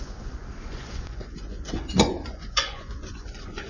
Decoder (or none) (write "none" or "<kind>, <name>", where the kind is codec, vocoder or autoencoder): vocoder, Vocos